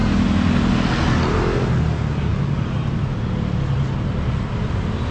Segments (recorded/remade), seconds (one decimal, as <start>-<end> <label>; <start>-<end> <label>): 0.0-5.1 recorded